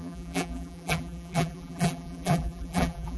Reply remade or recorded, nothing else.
remade